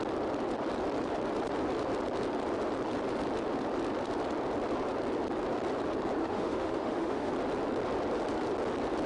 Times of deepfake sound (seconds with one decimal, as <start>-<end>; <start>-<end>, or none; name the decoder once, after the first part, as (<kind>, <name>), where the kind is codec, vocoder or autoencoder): 6.2-7.3 (autoencoder, DAC-VAE)